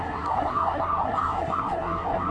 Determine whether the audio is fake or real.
fake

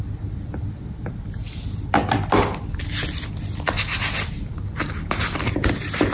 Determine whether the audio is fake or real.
real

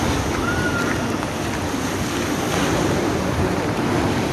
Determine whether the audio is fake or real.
real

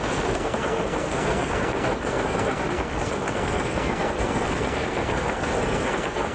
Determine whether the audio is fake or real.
fake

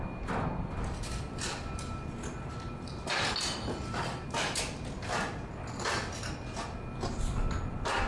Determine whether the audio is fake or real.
real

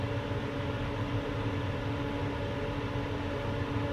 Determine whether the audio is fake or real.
real